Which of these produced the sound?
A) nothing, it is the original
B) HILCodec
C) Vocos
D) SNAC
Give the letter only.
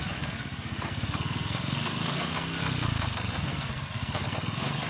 D